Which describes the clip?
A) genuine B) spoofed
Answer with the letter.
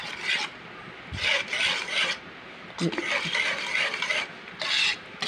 A